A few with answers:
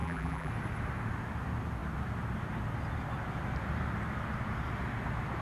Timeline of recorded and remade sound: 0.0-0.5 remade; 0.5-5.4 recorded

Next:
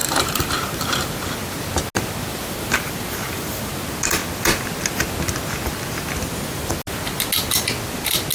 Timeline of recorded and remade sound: 0.0-1.1 remade; 1.1-2.3 recorded; 2.3-3.8 remade; 3.8-8.3 recorded

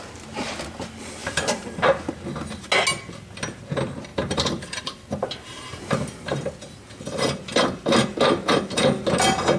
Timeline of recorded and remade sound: 0.0-1.2 recorded; 1.2-2.1 remade; 2.1-4.1 recorded; 4.1-6.4 remade; 6.4-9.6 recorded

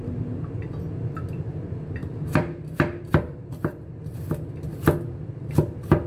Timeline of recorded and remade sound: 0.0-2.0 recorded; 2.0-3.9 remade; 3.9-6.1 recorded